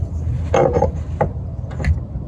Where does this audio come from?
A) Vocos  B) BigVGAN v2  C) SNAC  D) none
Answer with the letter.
D